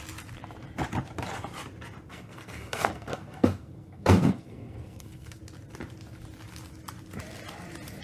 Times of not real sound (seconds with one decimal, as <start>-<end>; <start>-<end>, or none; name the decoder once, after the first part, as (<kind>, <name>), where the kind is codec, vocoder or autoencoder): 2.1-5.4 (codec, SNAC)

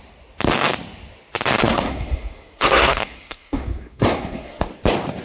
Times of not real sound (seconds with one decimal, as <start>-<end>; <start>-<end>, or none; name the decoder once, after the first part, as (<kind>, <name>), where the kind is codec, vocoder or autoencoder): 1.6-4.7 (codec, SNAC)

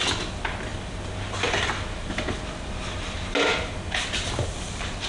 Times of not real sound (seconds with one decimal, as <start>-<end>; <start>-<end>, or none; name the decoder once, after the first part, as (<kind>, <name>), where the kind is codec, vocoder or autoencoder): none

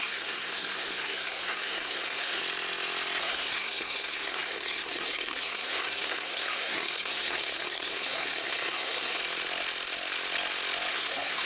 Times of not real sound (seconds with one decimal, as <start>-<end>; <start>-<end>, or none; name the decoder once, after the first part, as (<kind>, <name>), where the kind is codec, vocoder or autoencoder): 0.0-2.4 (codec, SNAC); 3.2-9.2; 10.9-11.5

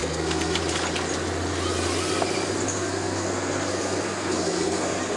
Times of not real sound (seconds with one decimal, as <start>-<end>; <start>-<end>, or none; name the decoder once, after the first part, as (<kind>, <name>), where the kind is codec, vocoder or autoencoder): 0.0-0.6 (codec, SNAC); 2.7-5.2

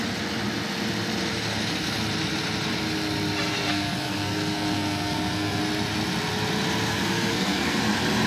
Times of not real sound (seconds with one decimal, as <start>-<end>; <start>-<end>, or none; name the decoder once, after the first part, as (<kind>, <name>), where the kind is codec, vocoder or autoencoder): 3.5-5.6 (codec, SNAC); 6.9-7.8